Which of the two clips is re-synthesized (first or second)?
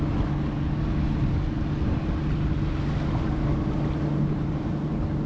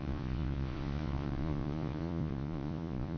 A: second